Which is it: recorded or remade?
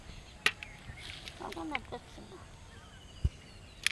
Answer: recorded